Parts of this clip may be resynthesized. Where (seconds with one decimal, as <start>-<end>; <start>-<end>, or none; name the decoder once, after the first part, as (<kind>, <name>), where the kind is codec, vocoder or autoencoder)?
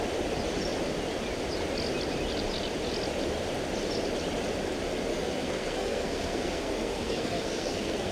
5.1-8.1 (codec, SNAC)